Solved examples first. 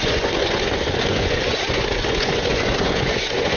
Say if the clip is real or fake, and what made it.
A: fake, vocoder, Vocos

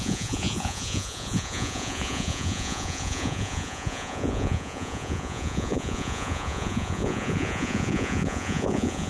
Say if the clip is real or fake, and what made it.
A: fake, vocoder, Vocos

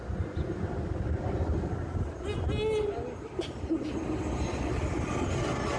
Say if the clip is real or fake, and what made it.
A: real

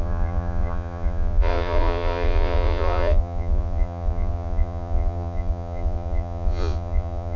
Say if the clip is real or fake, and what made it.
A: fake, vocoder, Vocos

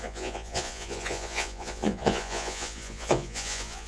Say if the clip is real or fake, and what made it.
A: fake, vocoder, Vocos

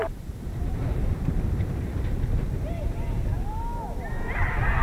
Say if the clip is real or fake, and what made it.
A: real